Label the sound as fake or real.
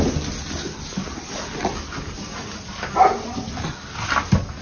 real